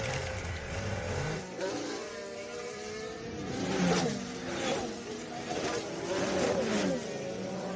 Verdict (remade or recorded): recorded